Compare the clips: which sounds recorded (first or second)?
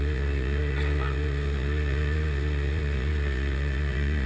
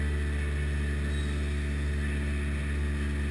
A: second